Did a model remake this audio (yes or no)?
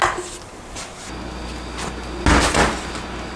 no